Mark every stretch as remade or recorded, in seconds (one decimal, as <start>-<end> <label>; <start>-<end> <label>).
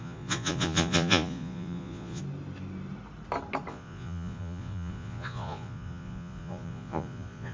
0.0-2.2 remade; 2.2-3.7 recorded; 3.7-7.5 remade